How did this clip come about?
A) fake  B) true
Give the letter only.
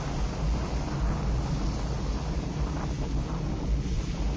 B